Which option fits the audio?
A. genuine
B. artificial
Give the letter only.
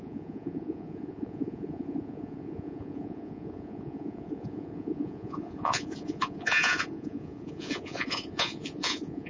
B